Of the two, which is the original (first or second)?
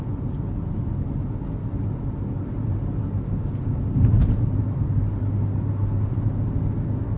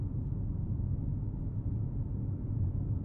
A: first